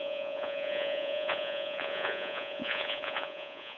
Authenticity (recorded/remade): remade